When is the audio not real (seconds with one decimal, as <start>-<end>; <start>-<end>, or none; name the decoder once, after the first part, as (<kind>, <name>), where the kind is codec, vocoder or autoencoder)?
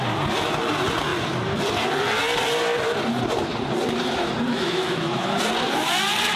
4.5-5.4 (autoencoder, DAC-VAE)